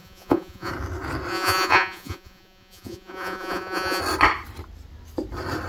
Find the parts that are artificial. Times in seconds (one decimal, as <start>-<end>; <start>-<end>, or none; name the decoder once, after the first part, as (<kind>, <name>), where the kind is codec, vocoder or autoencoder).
0.0-0.7 (vocoder, Vocos); 1.3-4.0